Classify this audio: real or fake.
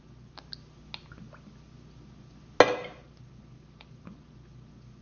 real